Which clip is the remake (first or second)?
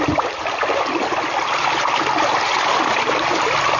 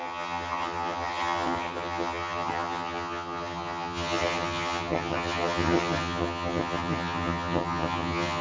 second